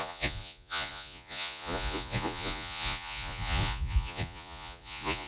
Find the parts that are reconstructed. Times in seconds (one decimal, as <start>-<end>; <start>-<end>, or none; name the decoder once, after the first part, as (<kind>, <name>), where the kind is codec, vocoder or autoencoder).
0.0-5.3 (vocoder, Vocos)